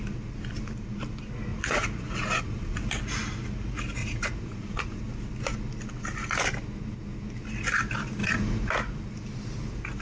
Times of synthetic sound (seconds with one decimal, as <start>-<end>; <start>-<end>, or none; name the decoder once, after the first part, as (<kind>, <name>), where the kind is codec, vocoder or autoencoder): 1.5-3.0 (vocoder, Vocos); 4.0-5.0; 8.2-8.7